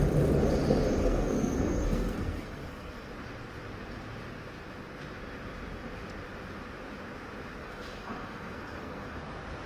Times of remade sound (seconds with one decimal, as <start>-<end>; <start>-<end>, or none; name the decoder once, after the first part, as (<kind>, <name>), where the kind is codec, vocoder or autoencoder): 1.0-3.1 (codec, SNAC); 7.6-9.2